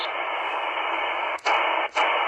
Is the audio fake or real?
real